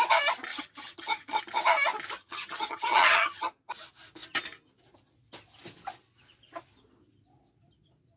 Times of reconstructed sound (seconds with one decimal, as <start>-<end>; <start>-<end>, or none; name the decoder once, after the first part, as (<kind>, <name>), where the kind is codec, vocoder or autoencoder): 0.5-1.4 (vocoder, HiFi-GAN); 2.2-3.5